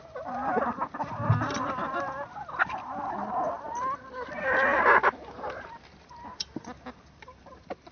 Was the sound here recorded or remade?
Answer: recorded